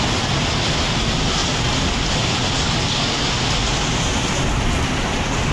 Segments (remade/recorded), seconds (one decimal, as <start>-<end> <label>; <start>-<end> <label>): 0.0-5.5 recorded